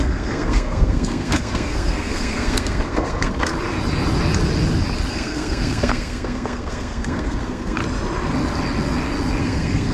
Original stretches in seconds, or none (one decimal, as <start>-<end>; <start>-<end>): 3.5-5.1; 7.8-9.4